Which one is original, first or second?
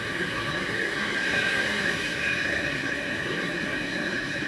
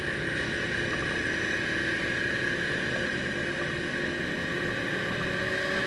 second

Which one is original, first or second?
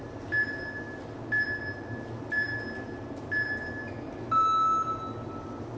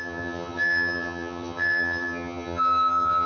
first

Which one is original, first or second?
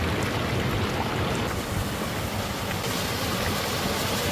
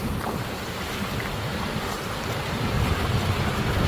first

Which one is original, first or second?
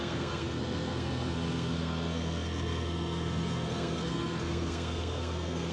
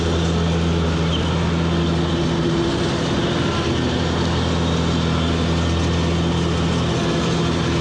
second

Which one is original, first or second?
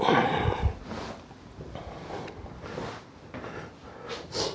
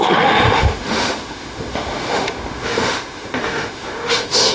first